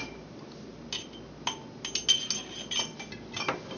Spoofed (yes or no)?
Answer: no